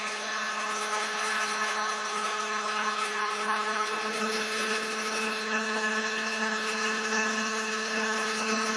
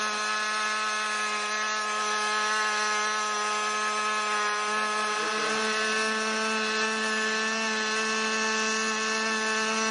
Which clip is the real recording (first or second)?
second